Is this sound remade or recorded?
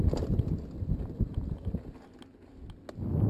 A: recorded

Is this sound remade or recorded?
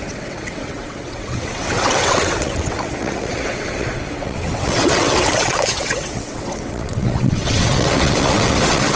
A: remade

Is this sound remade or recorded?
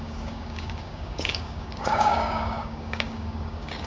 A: remade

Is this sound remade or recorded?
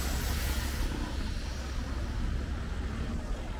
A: recorded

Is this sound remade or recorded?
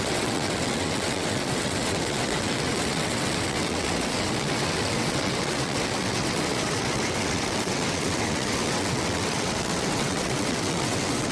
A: remade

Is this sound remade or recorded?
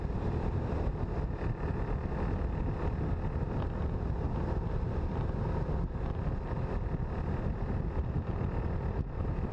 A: recorded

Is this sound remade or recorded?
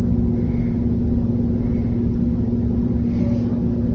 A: recorded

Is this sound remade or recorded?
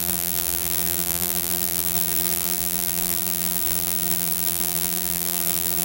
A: remade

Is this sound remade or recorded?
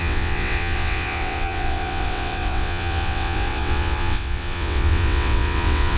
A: remade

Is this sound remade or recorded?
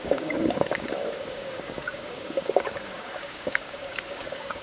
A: remade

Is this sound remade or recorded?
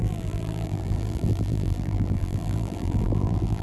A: remade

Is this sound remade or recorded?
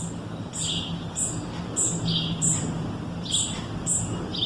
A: recorded